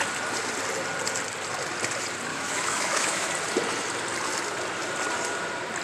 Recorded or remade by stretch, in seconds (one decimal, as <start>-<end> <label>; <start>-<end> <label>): 0.0-2.3 recorded; 2.3-3.3 remade; 3.3-5.8 recorded